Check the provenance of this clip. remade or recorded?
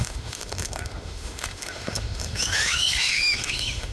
remade